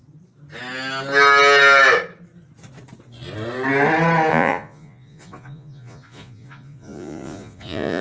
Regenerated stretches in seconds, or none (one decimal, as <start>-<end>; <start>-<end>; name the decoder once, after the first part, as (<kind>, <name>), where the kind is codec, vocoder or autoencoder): 4.3-8.0 (vocoder, Vocos)